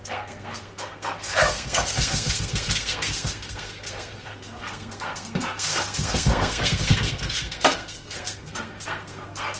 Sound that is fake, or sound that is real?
fake